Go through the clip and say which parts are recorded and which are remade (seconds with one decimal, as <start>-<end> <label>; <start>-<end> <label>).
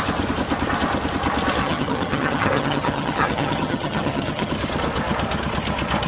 0.0-1.6 recorded; 1.6-4.5 remade; 4.5-6.1 recorded